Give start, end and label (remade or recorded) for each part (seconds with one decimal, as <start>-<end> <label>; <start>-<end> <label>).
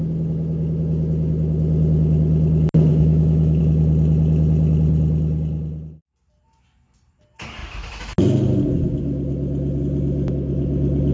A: 0.0-2.9 recorded; 2.9-3.6 remade; 3.6-11.1 recorded